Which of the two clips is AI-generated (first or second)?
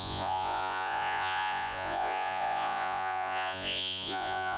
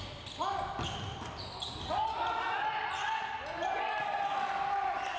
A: first